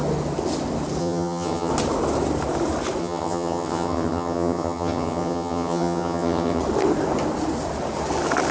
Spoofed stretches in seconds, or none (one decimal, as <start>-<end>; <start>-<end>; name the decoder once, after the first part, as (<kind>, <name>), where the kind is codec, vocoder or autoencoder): 1.0-1.7 (vocoder, HiFi-GAN); 3.0-6.6